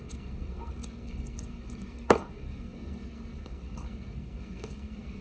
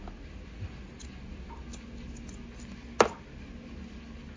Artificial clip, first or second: first